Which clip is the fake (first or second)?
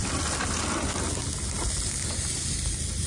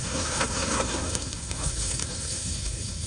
second